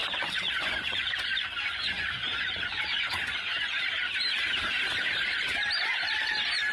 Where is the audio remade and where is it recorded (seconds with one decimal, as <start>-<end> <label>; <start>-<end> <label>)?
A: 0.0-3.8 remade; 3.8-6.7 recorded